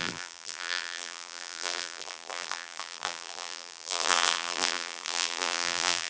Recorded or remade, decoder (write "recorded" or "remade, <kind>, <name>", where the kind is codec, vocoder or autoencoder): remade, vocoder, BigVGAN v2